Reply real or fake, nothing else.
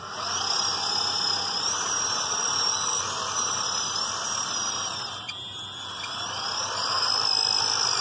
real